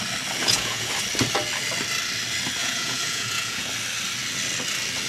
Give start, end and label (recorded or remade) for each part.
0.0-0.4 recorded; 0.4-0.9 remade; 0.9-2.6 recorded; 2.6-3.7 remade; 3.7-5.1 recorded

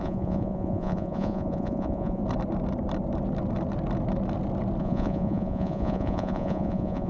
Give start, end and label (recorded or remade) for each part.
0.0-2.2 remade; 2.2-4.8 recorded; 4.8-7.1 remade

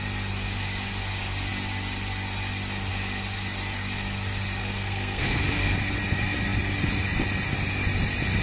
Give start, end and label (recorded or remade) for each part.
0.0-4.6 recorded; 4.6-5.4 remade; 5.4-8.4 recorded

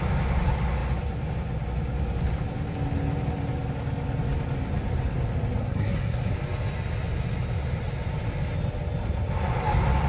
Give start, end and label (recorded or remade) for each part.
0.0-5.6 recorded; 5.6-6.3 remade; 6.3-10.1 recorded